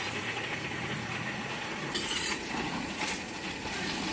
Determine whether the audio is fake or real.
fake